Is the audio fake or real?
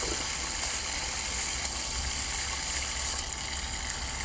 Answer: real